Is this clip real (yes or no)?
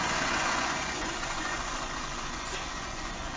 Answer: no